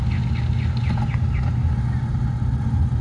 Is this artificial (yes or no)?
no